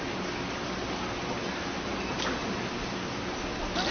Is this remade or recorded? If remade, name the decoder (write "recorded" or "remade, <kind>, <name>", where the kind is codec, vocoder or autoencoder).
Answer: recorded